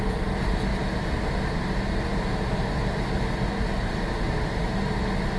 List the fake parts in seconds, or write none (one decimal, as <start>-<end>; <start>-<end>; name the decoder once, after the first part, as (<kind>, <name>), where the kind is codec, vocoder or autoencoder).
none